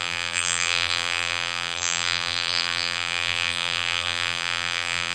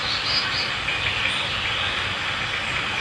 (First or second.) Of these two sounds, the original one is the second